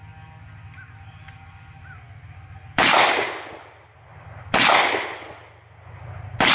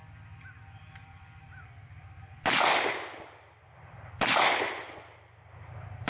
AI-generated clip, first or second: second